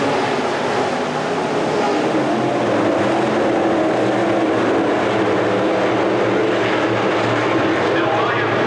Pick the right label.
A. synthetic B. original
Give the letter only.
B